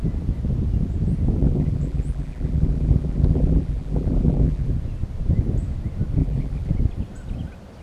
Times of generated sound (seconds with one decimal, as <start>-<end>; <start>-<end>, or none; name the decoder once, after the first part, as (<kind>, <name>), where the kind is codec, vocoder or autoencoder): 1.4-4.7 (vocoder, BigVGAN v2); 6.2-6.7